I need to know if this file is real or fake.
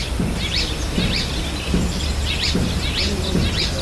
real